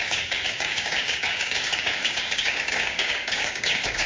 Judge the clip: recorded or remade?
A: remade